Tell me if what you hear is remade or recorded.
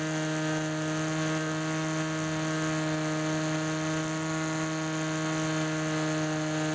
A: recorded